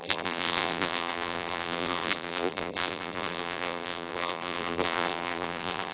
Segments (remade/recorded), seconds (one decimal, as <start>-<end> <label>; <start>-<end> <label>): 0.0-5.9 remade